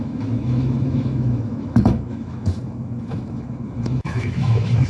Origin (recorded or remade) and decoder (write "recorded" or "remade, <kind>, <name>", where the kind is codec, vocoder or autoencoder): remade, autoencoder, DAC-VAE